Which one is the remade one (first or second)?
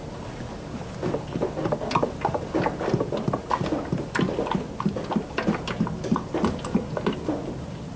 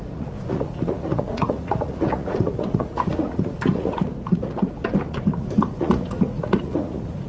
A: second